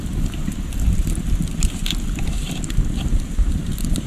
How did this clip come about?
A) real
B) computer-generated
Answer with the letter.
B